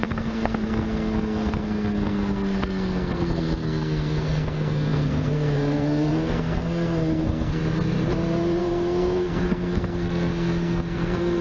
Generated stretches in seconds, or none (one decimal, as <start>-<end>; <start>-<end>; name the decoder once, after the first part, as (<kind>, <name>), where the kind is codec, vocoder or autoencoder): 0.0-7.6 (codec, SNAC); 8.6-11.4